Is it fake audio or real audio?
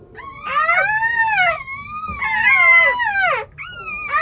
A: real